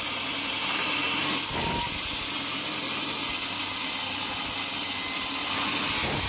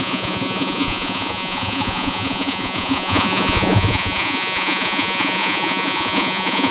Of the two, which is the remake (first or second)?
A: second